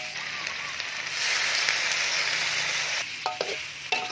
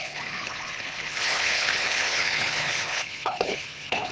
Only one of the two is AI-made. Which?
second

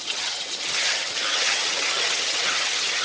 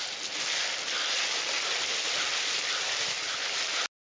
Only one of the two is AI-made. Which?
first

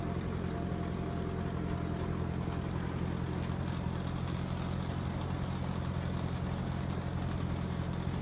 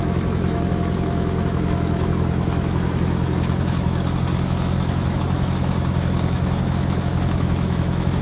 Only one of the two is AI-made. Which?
second